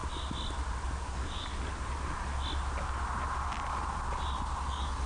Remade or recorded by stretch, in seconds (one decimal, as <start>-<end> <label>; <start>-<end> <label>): 0.0-1.0 recorded; 1.0-1.5 remade; 1.5-4.6 recorded; 4.6-5.1 remade